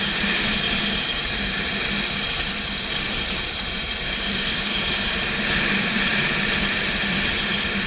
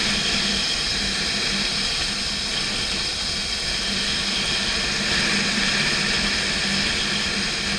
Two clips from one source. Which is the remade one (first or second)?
first